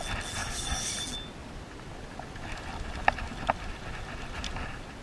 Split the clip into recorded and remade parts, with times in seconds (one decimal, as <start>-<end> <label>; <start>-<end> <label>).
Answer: 0.0-0.4 recorded; 0.4-0.9 remade; 0.9-5.0 recorded